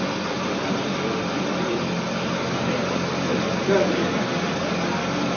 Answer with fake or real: real